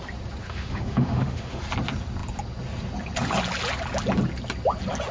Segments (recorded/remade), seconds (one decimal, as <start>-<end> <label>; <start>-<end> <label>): 0.0-0.4 recorded; 0.4-1.6 remade; 1.6-5.1 recorded